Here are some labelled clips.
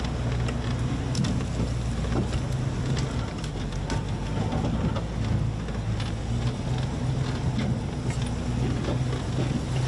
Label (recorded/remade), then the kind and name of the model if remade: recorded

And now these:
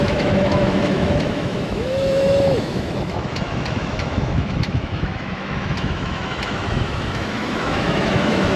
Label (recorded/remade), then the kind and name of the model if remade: remade, autoencoder, DAC-VAE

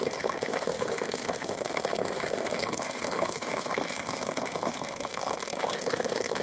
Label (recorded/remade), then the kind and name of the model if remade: remade, autoencoder, DAC-VAE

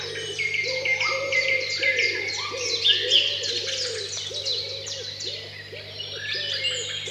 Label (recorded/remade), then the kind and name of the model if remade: recorded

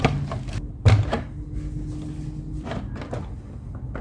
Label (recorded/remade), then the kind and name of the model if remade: recorded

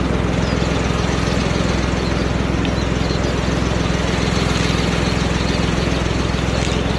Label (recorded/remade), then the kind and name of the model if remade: recorded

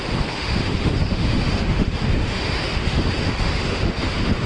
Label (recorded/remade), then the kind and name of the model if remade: remade, autoencoder, DAC-VAE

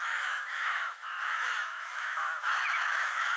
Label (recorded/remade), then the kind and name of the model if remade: remade, autoencoder, DAC-VAE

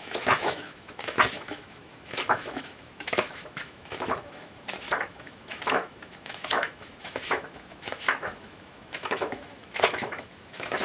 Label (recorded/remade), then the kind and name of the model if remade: remade, autoencoder, DAC-VAE